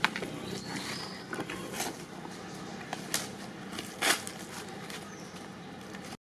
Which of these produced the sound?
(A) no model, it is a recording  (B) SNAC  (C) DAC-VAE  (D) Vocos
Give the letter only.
A